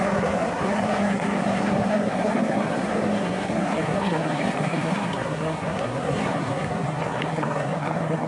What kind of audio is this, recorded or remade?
remade